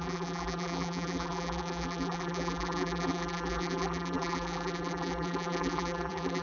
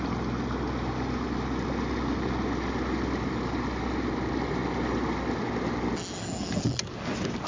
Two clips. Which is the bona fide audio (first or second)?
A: second